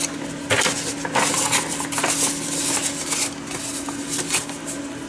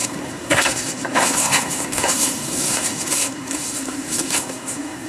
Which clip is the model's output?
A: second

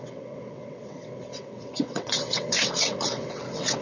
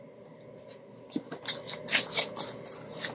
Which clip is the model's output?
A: first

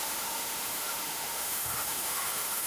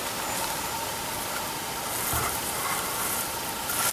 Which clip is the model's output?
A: first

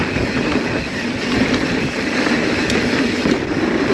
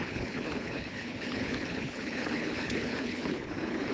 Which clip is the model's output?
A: second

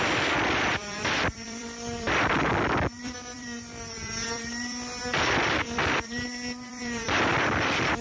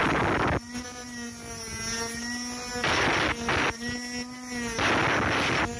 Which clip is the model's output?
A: first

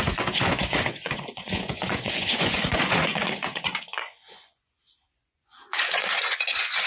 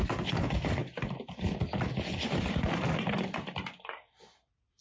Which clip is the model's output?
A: first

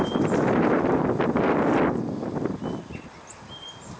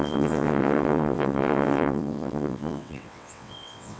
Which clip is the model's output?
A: second